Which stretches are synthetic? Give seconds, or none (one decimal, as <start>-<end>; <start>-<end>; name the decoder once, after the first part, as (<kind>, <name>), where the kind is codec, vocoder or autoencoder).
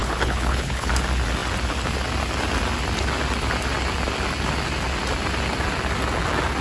0.0-0.9 (codec, HILCodec)